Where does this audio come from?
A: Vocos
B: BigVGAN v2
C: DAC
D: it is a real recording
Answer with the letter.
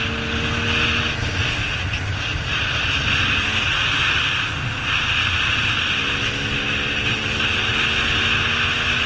D